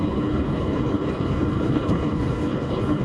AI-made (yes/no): yes